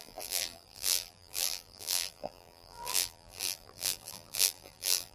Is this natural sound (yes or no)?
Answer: no